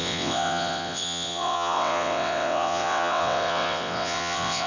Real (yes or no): no